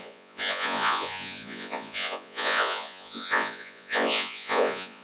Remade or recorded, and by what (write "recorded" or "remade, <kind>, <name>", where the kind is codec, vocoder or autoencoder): remade, vocoder, Vocos